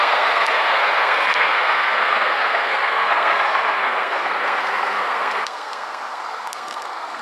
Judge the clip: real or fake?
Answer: fake